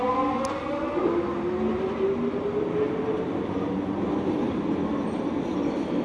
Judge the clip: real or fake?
real